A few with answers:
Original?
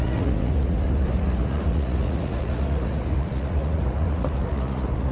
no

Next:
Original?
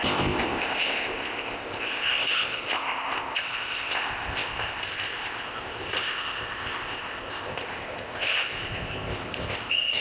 no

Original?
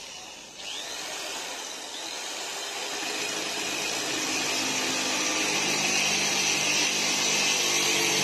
yes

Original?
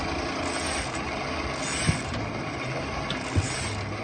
yes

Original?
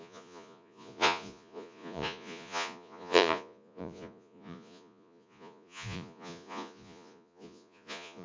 no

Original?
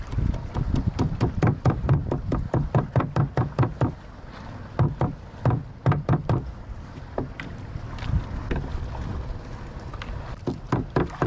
yes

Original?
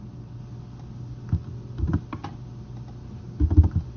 yes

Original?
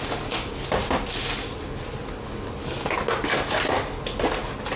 yes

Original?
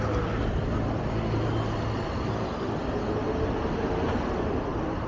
yes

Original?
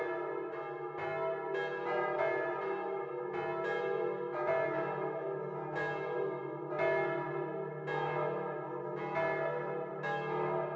yes